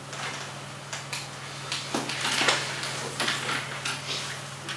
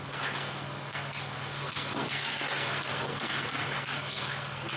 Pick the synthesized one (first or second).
second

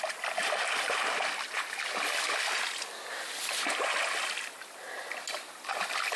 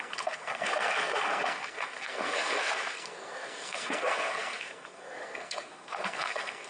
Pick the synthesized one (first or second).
second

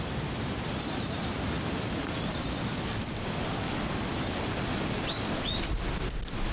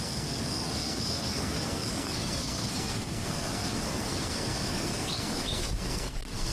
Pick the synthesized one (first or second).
second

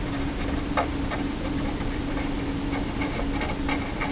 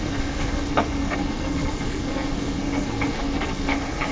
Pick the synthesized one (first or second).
second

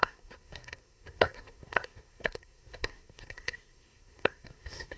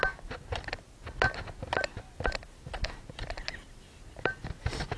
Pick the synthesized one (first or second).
first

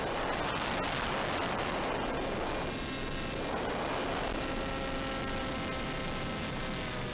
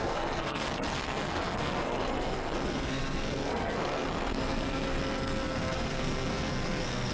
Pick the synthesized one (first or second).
second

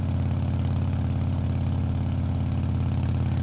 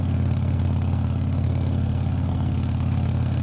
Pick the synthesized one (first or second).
second